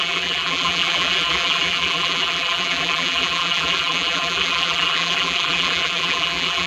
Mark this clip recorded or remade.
remade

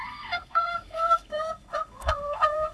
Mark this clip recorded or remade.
remade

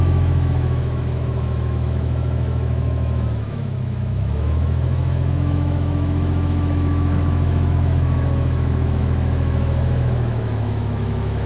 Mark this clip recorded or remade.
remade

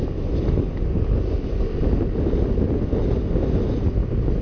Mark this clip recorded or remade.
recorded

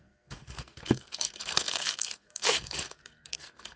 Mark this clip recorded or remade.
remade